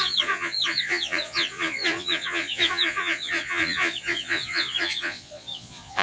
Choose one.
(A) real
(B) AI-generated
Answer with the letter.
B